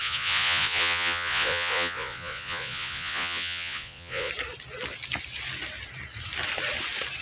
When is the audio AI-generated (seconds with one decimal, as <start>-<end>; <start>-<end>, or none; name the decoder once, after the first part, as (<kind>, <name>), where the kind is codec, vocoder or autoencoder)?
0.0-4.3 (vocoder, Vocos)